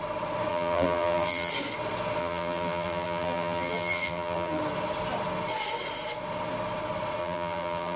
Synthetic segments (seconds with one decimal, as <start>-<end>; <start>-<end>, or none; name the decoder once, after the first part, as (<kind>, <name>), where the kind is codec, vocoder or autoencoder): 0.5-1.5 (vocoder, BigVGAN v2); 2.2-4.6; 7.2-8.0

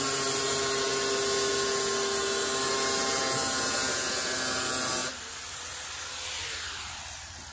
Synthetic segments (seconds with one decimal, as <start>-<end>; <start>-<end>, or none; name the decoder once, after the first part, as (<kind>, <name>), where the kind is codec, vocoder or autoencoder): none

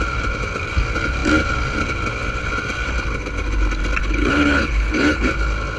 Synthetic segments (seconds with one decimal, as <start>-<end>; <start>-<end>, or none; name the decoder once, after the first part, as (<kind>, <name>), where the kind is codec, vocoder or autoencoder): 4.0-5.3 (codec, HILCodec)

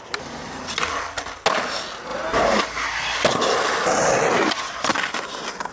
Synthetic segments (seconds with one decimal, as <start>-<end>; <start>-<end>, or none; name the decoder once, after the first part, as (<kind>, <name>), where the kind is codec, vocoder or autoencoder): none

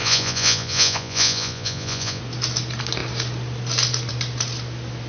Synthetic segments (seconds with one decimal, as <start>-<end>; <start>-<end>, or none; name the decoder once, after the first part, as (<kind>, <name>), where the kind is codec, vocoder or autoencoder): 0.0-2.2 (vocoder, Vocos)

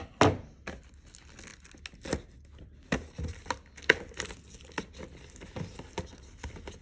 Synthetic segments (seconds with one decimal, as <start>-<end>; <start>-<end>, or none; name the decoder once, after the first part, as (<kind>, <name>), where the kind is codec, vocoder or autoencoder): none

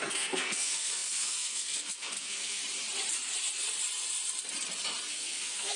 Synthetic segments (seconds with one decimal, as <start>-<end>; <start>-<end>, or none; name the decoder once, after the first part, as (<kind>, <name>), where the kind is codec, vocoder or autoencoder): 0.0-2.6 (codec, SNAC); 5.1-5.8

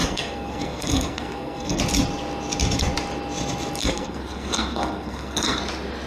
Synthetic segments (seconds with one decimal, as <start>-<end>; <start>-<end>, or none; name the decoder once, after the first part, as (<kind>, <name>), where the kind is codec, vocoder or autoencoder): 0.0-1.8 (codec, SNAC); 3.8-5.6